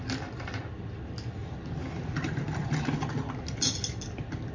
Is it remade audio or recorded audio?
recorded